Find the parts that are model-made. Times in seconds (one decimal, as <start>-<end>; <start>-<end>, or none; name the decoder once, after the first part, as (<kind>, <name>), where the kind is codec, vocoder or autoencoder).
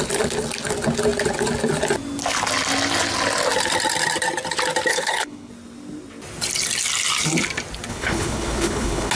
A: 4.9-5.5 (codec, HILCodec); 7.9-9.1